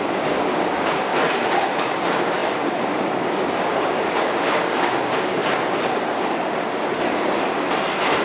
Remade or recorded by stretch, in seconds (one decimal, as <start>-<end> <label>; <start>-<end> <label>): 0.0-1.1 remade; 1.1-2.0 recorded; 2.0-5.4 remade; 5.4-8.2 recorded